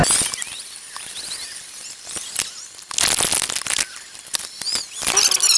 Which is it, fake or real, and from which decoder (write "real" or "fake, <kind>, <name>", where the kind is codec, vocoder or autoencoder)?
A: real